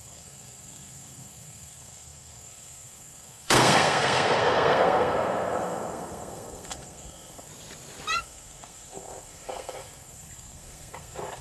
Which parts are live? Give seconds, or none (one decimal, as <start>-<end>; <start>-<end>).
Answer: 7.5-8.2